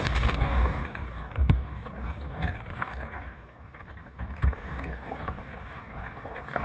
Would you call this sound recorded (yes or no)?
no